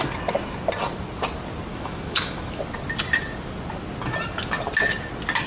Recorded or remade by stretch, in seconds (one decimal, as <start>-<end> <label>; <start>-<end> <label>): 0.0-1.7 recorded; 1.7-2.6 remade; 2.6-5.5 recorded